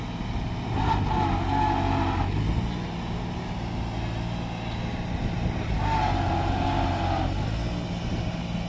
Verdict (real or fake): real